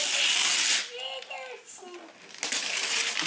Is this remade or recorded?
recorded